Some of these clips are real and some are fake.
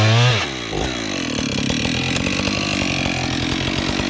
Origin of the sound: real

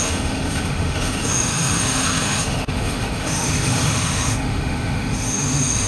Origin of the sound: fake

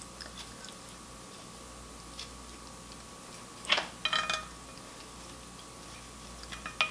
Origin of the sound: real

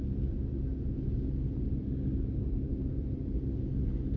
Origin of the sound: real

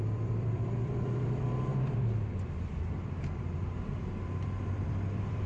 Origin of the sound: fake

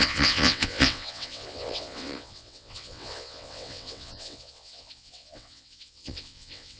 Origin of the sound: fake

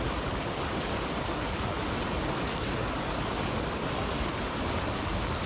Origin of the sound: real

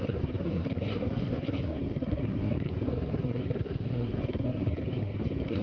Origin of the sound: fake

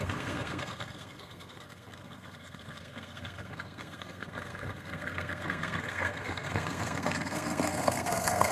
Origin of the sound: fake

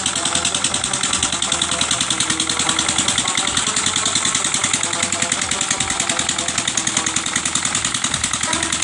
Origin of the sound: real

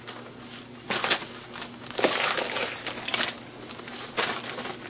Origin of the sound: real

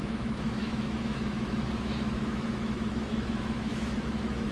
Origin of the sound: fake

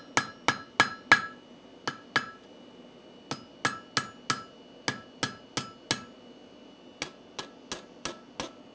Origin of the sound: real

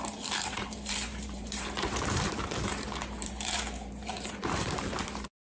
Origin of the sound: fake